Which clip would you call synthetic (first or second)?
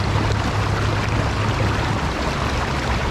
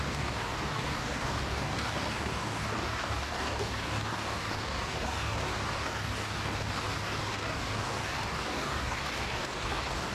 second